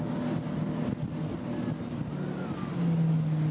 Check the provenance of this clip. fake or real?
real